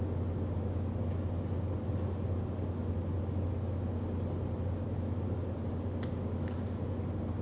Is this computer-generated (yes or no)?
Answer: no